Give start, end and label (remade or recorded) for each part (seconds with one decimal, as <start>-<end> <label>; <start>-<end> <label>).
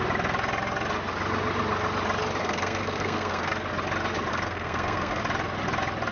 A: 0.0-2.4 recorded; 2.4-3.5 remade; 3.5-4.3 recorded; 4.3-5.2 remade; 5.2-6.1 recorded